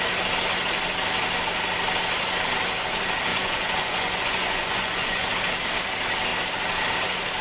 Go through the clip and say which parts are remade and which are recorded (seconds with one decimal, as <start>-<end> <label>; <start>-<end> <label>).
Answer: 0.0-3.3 recorded; 3.3-5.3 remade; 5.3-7.4 recorded

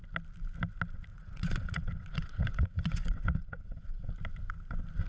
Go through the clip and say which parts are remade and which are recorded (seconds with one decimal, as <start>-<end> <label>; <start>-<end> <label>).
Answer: 0.0-1.1 recorded; 1.1-4.1 remade; 4.1-5.1 recorded

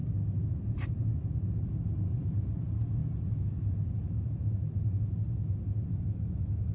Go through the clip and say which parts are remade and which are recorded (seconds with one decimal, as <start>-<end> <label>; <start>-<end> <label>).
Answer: 0.0-6.7 recorded